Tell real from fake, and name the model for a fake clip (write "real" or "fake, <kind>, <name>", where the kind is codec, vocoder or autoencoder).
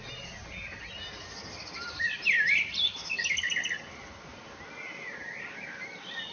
real